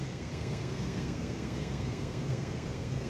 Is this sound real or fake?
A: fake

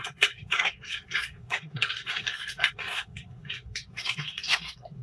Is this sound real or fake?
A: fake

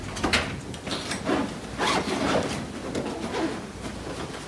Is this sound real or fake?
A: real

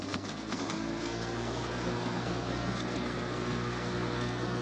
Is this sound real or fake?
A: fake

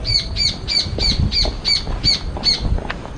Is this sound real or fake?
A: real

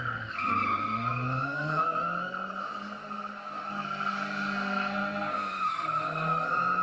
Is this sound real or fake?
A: fake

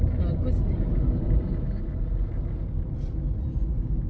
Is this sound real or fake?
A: real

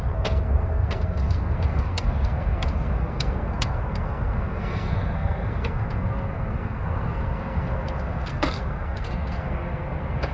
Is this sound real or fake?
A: fake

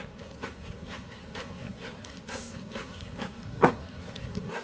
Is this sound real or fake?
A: fake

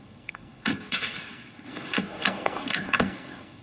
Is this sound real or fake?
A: fake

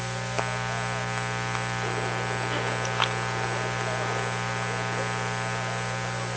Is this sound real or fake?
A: real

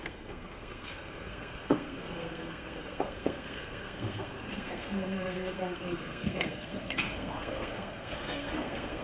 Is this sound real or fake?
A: fake